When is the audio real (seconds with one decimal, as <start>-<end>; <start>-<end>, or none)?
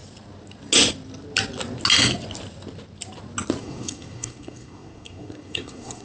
0.0-3.6